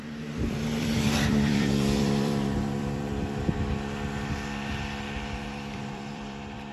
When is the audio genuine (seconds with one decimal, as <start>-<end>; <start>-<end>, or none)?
3.1-5.4